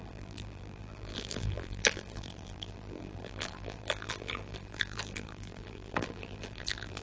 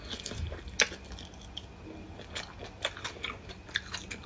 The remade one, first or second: first